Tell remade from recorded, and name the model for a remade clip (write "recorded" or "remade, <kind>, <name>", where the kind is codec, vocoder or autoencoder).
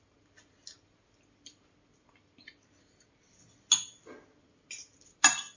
recorded